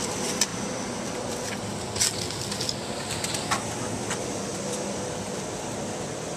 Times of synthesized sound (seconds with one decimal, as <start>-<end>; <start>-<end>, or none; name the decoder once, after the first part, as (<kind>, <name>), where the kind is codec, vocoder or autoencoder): 0.5-1.5 (vocoder, BigVGAN v2); 4.5-5.1